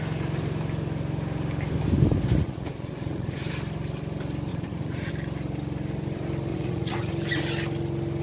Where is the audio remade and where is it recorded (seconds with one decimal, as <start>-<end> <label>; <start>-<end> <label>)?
0.0-2.3 recorded; 2.3-3.5 remade; 3.5-4.5 recorded; 4.5-5.1 remade; 5.1-6.5 recorded; 6.5-7.1 remade; 7.1-8.2 recorded